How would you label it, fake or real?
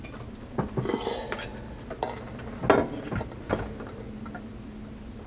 real